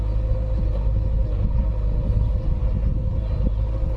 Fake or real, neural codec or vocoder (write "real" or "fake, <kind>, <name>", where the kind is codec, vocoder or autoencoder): real